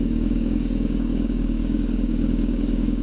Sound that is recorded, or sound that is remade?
remade